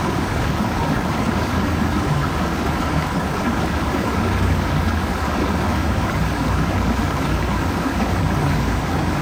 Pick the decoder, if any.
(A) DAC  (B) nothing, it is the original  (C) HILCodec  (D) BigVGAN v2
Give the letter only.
A